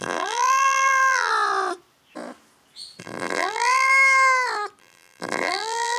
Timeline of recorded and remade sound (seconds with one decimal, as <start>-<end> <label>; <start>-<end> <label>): 0.0-1.3 remade; 1.3-3.0 recorded; 3.0-3.9 remade; 3.9-4.8 recorded; 4.8-6.0 remade